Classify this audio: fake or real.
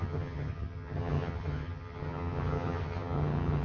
fake